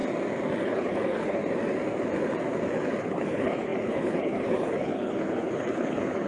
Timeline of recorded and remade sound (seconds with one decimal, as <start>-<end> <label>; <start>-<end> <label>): 0.0-0.6 recorded; 0.6-1.4 remade; 1.4-3.0 recorded; 3.0-6.3 remade